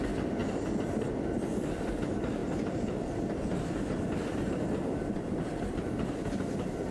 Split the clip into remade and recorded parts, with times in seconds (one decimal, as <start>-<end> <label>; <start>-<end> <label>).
0.0-6.9 remade